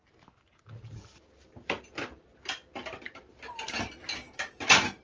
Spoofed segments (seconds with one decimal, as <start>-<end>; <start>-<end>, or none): none